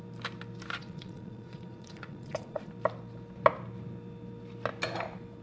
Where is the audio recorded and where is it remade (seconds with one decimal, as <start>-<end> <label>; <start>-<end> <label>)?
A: 0.0-0.8 recorded; 0.8-2.7 remade; 2.7-5.4 recorded